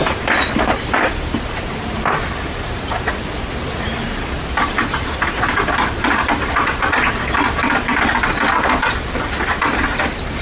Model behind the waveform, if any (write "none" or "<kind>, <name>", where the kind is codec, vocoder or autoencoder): none